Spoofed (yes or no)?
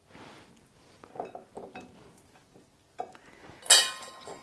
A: no